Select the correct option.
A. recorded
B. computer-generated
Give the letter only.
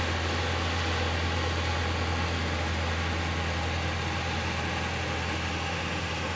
A